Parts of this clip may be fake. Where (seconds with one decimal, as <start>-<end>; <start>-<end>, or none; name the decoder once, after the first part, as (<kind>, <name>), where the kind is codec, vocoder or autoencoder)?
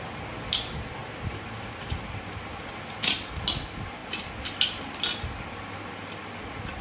1.0-2.3 (vocoder, BigVGAN v2)